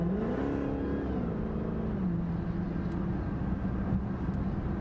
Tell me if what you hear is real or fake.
real